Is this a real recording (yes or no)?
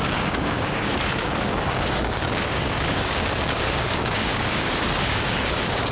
no